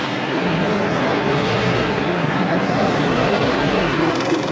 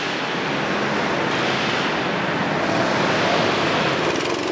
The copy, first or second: first